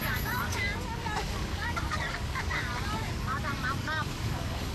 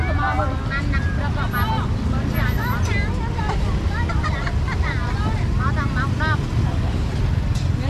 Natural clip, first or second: second